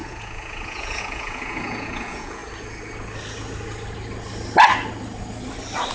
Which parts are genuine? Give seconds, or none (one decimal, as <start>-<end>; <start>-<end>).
2.4-5.9